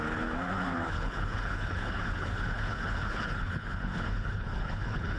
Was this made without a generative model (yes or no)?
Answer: no